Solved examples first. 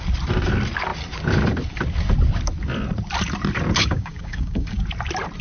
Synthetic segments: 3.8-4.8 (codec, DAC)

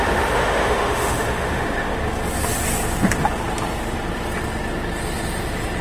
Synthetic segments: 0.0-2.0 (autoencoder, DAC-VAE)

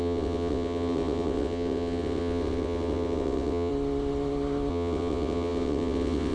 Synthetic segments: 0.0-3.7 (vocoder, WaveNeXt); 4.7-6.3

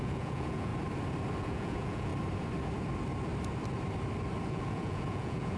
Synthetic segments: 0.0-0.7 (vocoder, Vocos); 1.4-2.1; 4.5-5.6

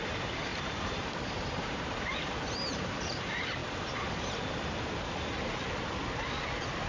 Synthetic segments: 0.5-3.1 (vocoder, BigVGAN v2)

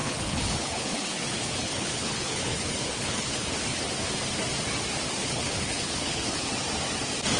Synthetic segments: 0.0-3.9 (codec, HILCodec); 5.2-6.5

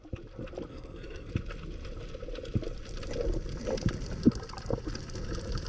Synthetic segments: 0.7-1.3 (codec, SNAC)

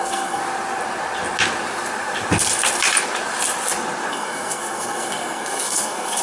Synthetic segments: 0.0-0.4 (codec, SNAC); 4.1-6.2